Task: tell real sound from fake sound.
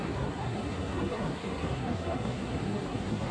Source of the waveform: fake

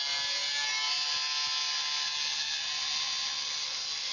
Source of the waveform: real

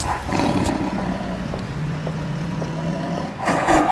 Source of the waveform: fake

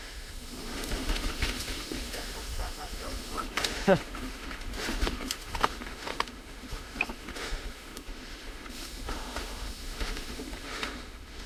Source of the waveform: fake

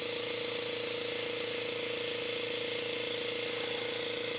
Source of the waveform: real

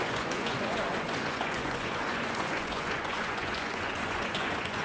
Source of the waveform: fake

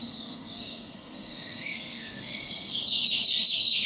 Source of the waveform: fake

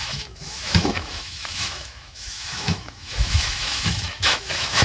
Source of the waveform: fake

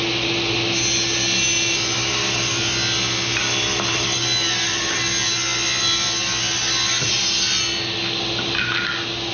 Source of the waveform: real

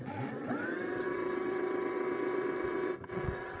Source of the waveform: fake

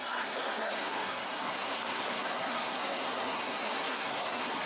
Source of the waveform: fake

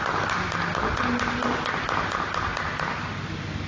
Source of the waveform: real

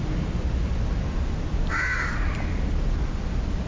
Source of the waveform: real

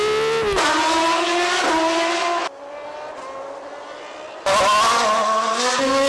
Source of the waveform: real